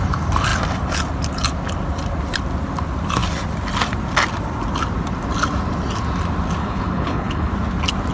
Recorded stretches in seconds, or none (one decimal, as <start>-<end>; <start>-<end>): 0.0-6.6; 7.5-8.1